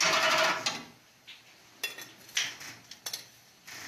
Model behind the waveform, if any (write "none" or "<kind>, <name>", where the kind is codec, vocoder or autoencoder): none